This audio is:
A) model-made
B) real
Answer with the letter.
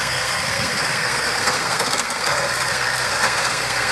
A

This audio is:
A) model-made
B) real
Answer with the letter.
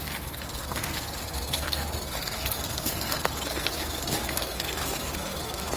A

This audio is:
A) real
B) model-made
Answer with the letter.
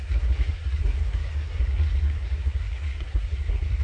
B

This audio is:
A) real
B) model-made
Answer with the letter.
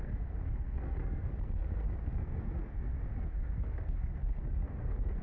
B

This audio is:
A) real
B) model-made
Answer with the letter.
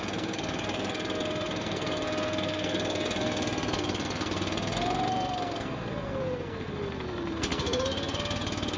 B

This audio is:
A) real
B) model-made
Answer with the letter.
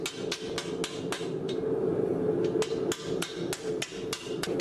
A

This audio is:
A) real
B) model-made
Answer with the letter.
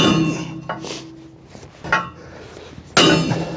A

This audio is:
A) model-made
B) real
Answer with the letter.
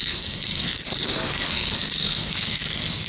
A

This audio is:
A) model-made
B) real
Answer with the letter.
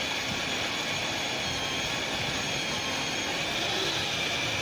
B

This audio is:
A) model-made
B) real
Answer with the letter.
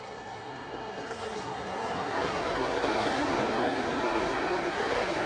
A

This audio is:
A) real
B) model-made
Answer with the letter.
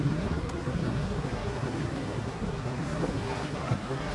B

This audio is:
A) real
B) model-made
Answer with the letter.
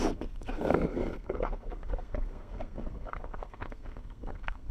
B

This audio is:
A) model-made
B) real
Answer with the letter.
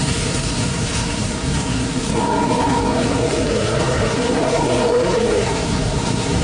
A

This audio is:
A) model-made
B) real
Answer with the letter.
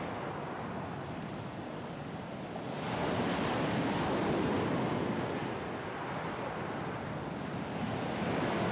B